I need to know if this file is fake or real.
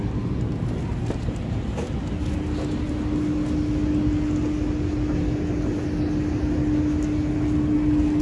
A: real